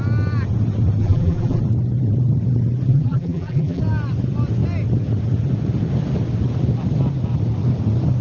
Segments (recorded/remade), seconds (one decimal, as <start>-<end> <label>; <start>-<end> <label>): 0.0-1.0 recorded; 1.0-1.6 remade; 1.6-2.9 recorded; 2.9-3.8 remade; 3.8-8.2 recorded